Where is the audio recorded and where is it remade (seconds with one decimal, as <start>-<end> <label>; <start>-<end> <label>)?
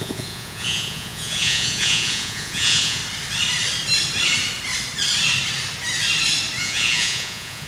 0.0-3.0 remade; 3.0-6.6 recorded; 6.6-7.7 remade